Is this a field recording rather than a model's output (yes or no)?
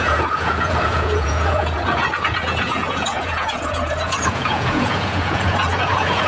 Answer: no